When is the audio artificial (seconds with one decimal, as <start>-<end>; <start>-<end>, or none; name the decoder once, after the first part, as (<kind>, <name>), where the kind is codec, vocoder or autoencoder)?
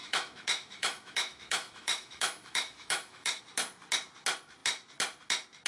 0.0-3.4 (autoencoder, DAC-VAE)